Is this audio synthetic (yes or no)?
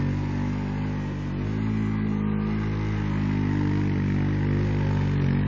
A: no